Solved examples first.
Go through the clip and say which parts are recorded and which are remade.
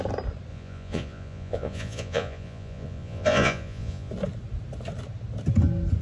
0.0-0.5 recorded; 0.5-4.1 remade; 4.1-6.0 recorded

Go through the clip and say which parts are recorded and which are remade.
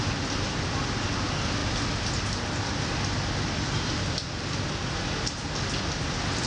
0.0-6.5 recorded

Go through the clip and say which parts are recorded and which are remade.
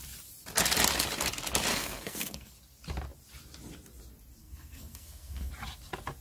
0.0-1.7 recorded; 1.7-2.5 remade; 2.5-4.4 recorded; 4.4-5.5 remade; 5.5-6.2 recorded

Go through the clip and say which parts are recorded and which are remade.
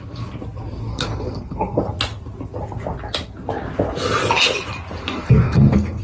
0.0-0.9 recorded; 0.9-1.8 remade; 1.8-5.0 recorded; 5.0-6.0 remade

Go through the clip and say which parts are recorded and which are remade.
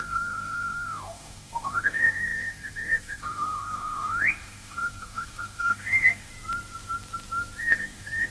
0.0-6.3 remade; 6.3-7.6 recorded; 7.6-8.3 remade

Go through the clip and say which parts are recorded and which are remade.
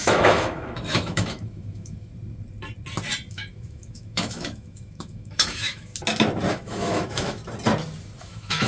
0.0-2.1 remade; 2.1-3.3 recorded; 3.3-5.9 remade; 5.9-6.5 recorded; 6.5-7.4 remade; 7.4-8.2 recorded; 8.2-8.7 remade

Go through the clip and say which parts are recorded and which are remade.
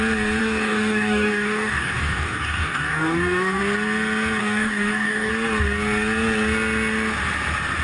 0.0-0.4 recorded; 0.4-3.6 remade; 3.6-4.4 recorded; 4.4-5.3 remade; 5.3-7.8 recorded